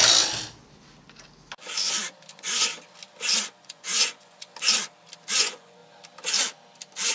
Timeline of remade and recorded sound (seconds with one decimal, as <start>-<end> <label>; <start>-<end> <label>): 0.0-2.3 recorded; 2.3-2.7 remade; 2.7-3.4 recorded; 3.4-4.5 remade; 4.5-5.3 recorded; 5.3-5.8 remade; 5.8-7.1 recorded